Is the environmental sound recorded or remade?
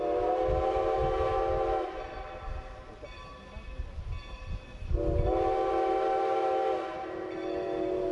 recorded